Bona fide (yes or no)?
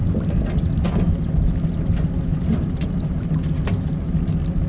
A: yes